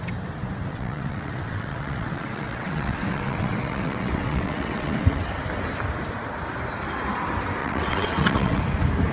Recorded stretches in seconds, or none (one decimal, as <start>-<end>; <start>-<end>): 0.0-0.7; 5.3-7.6; 8.6-9.1